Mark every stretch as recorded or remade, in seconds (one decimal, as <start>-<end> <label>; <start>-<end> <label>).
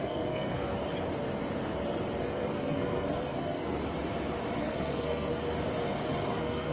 0.0-0.7 remade; 0.7-2.2 recorded; 2.2-3.8 remade; 3.8-4.6 recorded; 4.6-5.4 remade; 5.4-6.3 recorded; 6.3-6.7 remade